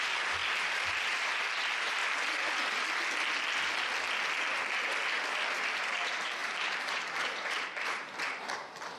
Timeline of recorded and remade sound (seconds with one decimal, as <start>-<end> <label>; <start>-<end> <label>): 0.0-0.4 remade; 0.4-0.9 recorded; 0.9-2.0 remade; 2.0-5.5 recorded; 5.5-9.0 remade